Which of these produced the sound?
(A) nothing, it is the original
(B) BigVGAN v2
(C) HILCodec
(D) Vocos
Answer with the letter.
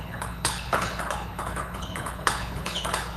C